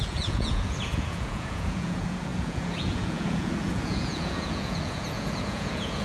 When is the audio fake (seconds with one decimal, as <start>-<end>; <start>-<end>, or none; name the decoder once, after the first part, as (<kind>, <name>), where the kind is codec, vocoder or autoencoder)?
0.0-6.0 (vocoder, Vocos)